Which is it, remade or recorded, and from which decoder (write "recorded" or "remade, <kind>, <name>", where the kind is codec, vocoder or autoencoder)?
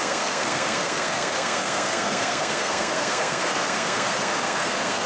remade, codec, SNAC